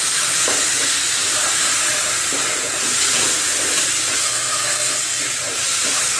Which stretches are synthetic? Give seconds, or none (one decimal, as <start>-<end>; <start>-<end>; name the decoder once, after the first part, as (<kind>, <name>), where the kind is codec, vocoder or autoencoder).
4.2-5.2 (codec, SNAC)